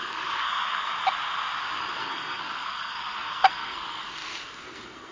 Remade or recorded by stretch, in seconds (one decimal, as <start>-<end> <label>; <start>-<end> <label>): 0.0-0.9 remade; 0.9-2.0 recorded; 2.0-5.1 remade